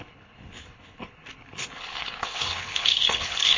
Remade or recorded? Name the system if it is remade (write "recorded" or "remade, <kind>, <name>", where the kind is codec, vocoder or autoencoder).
remade, codec, HILCodec